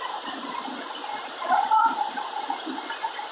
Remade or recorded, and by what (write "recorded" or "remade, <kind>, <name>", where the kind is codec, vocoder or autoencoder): remade, vocoder, BigVGAN v2